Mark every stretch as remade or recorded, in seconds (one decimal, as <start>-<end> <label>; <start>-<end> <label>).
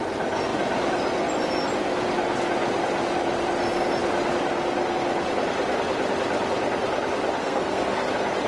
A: 0.0-7.4 recorded; 7.4-8.1 remade; 8.1-8.5 recorded